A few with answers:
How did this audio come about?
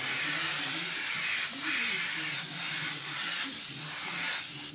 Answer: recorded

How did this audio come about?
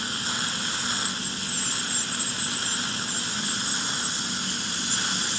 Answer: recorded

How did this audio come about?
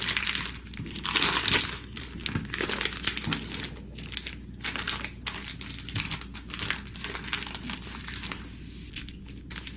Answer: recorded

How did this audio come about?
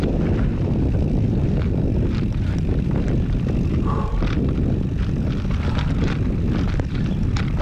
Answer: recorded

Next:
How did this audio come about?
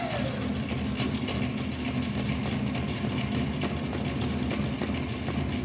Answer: recorded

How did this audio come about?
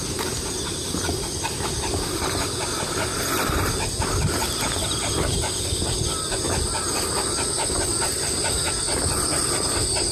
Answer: recorded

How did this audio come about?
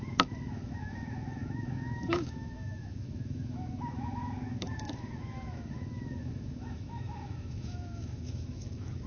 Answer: remade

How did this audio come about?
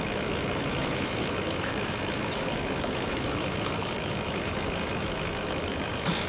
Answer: remade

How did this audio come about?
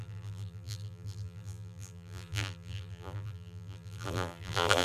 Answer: remade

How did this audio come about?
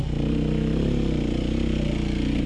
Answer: recorded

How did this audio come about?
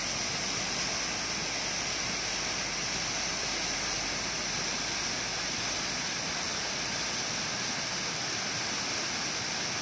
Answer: recorded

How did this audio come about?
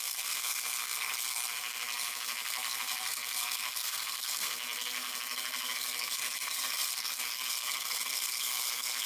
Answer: remade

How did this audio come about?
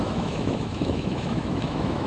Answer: remade